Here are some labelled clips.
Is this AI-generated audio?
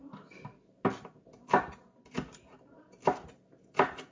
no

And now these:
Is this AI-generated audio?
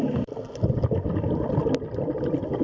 no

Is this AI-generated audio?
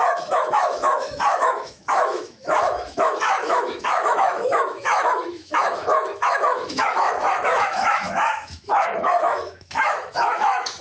yes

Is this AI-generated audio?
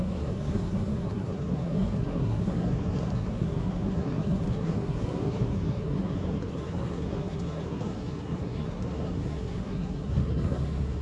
yes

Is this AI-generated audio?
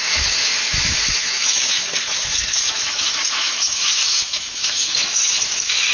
yes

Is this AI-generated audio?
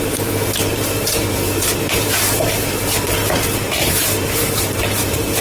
yes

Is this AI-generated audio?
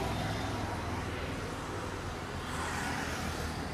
no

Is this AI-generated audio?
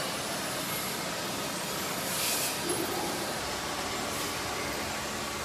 no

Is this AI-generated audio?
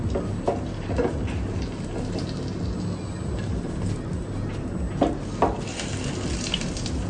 no